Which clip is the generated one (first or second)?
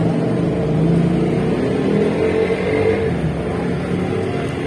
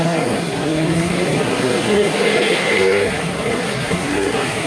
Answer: second